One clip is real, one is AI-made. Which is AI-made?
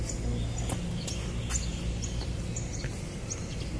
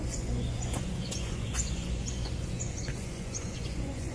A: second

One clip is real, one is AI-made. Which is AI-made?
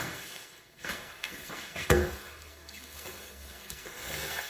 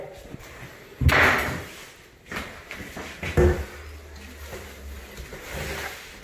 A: first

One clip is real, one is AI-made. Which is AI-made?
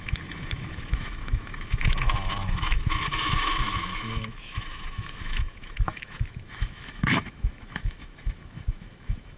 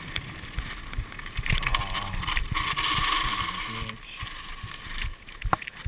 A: first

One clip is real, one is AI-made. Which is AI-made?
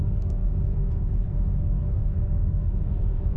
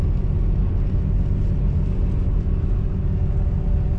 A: first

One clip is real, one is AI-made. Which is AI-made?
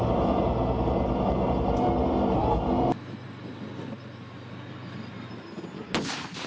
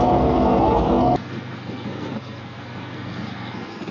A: second